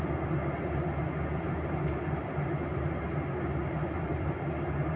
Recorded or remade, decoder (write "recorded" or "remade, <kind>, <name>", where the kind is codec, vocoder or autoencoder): recorded